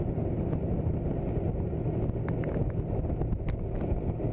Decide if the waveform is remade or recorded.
recorded